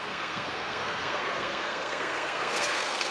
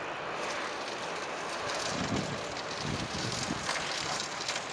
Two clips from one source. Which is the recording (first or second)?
second